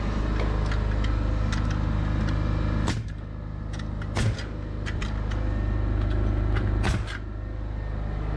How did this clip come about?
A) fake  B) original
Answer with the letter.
B